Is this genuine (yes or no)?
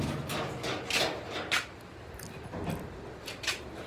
yes